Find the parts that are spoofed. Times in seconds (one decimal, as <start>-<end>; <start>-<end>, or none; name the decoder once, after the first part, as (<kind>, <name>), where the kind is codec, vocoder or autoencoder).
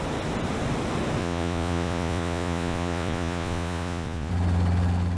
1.2-4.3 (vocoder, Vocos)